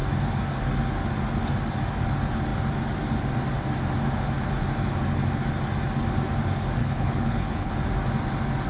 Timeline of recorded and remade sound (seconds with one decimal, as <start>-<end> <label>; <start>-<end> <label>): 0.0-6.8 recorded; 6.8-7.7 remade; 7.7-8.7 recorded

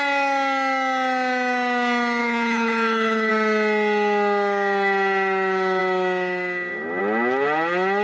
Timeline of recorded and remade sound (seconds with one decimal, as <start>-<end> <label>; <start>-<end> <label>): 0.0-2.2 recorded; 2.2-3.3 remade; 3.3-8.0 recorded

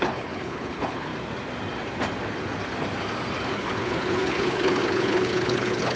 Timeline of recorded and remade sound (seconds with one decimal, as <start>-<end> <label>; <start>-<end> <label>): 0.0-1.1 remade; 1.1-3.5 recorded; 3.5-6.0 remade

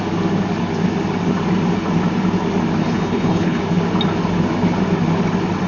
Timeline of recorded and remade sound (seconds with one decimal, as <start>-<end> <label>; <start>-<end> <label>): 0.0-2.8 recorded; 2.8-3.6 remade; 3.6-5.7 recorded